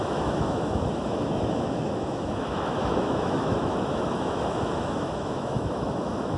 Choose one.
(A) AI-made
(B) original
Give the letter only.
A